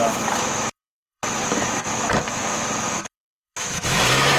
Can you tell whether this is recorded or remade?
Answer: remade